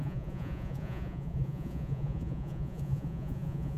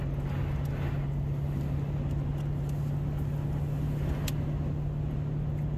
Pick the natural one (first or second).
second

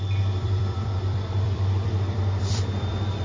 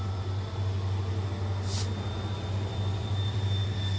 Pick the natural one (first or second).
second